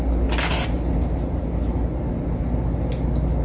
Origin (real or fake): real